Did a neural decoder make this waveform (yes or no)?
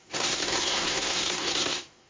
yes